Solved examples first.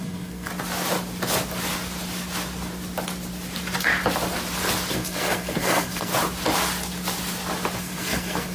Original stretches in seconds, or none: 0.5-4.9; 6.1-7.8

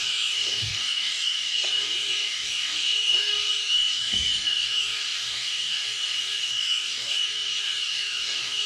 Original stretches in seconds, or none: none